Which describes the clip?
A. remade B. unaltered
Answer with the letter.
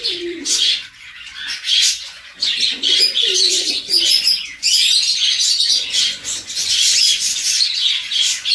A